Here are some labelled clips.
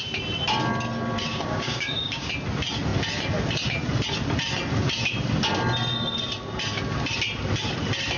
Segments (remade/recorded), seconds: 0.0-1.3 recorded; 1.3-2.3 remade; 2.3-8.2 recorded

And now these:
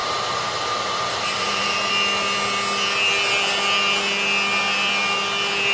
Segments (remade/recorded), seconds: 0.0-1.9 remade; 1.9-5.7 recorded

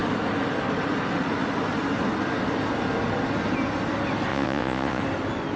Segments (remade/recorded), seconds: 0.0-4.3 recorded; 4.3-5.0 remade; 5.0-5.6 recorded

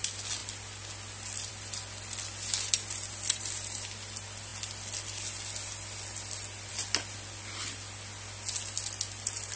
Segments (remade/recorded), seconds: 0.0-9.6 recorded